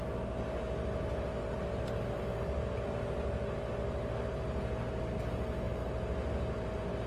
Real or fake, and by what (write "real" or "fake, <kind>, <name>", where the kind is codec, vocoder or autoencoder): real